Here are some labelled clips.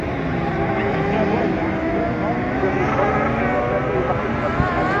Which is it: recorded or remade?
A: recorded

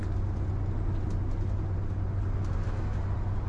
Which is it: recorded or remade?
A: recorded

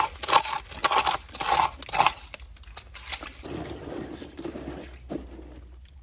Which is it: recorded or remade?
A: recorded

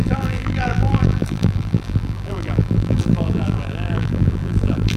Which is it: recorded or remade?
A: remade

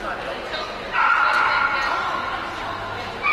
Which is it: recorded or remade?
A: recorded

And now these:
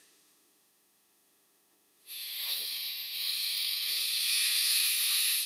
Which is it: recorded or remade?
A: remade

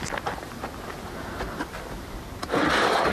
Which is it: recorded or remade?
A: recorded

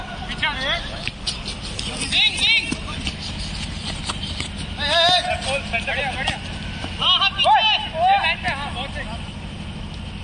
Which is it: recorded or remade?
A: recorded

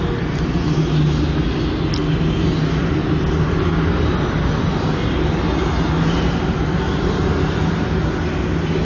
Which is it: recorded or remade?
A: recorded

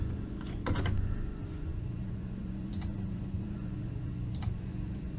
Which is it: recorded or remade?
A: remade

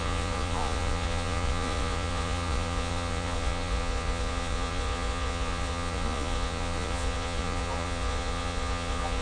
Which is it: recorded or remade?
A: remade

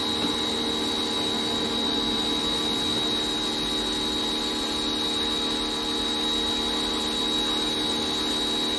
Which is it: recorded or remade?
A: recorded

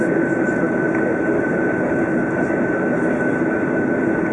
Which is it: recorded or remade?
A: recorded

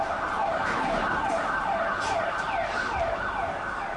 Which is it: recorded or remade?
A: recorded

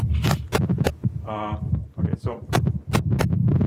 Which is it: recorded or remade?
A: recorded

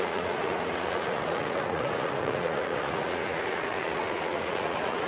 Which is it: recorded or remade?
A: remade